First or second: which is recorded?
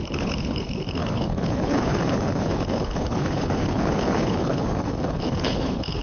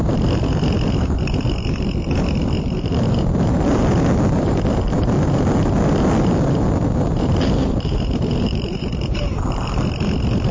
second